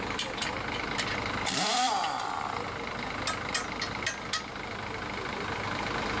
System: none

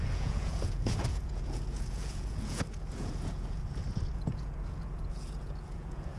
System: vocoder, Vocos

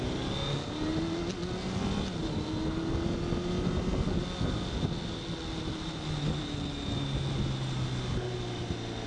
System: none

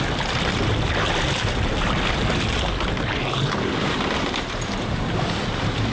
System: none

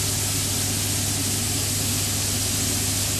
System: none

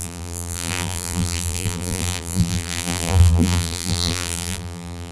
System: vocoder, BigVGAN v2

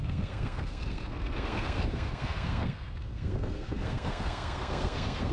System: codec, SNAC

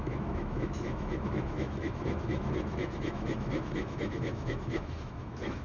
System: autoencoder, DAC-VAE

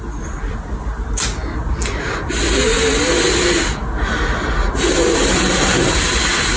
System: none